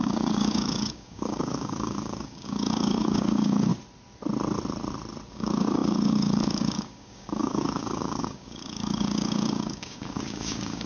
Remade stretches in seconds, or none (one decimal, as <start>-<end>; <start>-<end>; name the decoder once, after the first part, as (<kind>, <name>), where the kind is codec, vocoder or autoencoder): 0.0-3.7 (codec, DAC); 5.3-10.9